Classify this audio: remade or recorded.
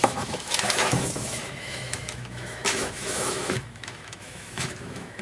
remade